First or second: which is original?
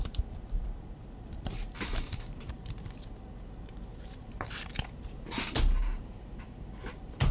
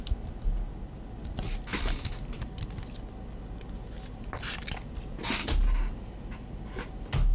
second